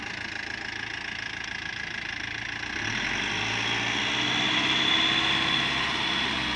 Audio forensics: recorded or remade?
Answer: recorded